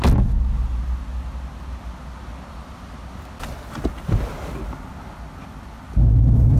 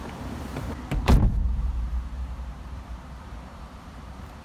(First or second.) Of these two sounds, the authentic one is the first